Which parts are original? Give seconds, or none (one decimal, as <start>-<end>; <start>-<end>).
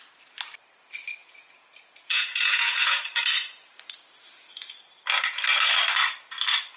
0.0-1.2; 3.2-6.8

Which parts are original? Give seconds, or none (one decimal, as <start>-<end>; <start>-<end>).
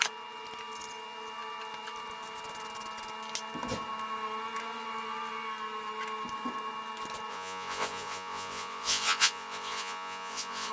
0.0-7.3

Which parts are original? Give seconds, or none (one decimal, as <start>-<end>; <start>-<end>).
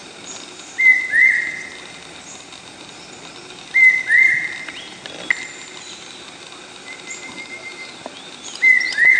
0.0-9.2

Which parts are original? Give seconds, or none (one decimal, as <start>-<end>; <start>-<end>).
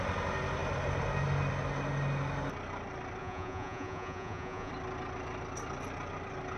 0.0-3.2; 4.7-6.6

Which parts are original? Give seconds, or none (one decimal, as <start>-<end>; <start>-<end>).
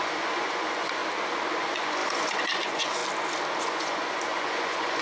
1.0-1.6; 3.0-3.6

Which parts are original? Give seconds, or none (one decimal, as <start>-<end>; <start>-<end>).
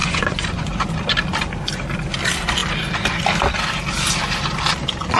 0.9-5.2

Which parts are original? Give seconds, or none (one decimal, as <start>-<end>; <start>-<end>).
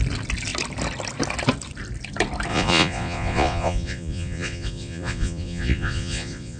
0.0-2.5